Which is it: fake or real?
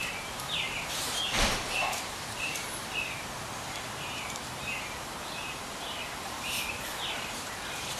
fake